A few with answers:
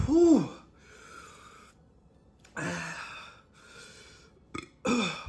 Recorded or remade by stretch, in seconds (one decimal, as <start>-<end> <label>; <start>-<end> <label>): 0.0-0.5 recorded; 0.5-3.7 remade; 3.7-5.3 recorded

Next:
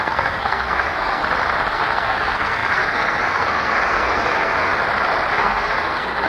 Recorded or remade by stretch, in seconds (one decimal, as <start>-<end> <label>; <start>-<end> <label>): 0.0-1.2 remade; 1.2-1.7 recorded; 1.7-4.7 remade; 4.7-5.3 recorded; 5.3-6.3 remade

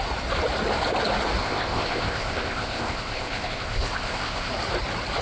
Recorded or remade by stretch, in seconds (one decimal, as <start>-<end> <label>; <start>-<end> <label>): 0.0-1.4 recorded; 1.4-4.5 remade; 4.5-5.2 recorded

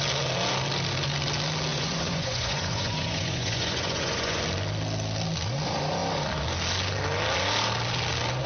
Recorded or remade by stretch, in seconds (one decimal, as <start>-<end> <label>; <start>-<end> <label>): 0.0-1.7 recorded; 1.7-4.4 remade; 4.4-8.5 recorded

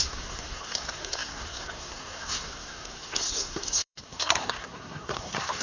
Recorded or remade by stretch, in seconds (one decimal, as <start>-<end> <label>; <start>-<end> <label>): 0.0-5.6 remade

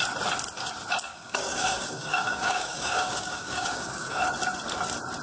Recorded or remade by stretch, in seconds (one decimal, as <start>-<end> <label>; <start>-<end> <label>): 0.0-1.1 recorded; 1.1-4.2 remade; 4.2-5.2 recorded

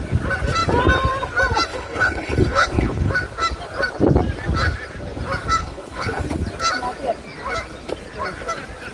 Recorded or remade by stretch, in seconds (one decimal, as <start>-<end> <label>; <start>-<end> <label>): 0.0-1.7 recorded; 1.7-3.1 remade; 3.1-5.6 recorded; 5.6-6.2 remade; 6.2-8.9 recorded